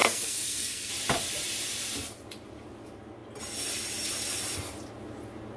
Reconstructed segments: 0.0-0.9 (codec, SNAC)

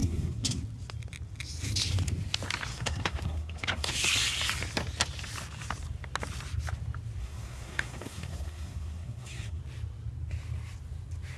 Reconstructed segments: 0.0-0.6 (codec, SNAC); 2.7-3.9; 7.2-9.6